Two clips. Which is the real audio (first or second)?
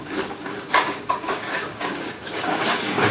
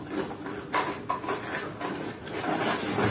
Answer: second